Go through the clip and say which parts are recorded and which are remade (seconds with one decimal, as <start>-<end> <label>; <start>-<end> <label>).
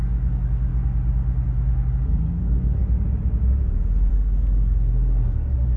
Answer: 0.0-0.7 remade; 0.7-1.9 recorded; 1.9-2.8 remade; 2.8-4.1 recorded; 4.1-5.8 remade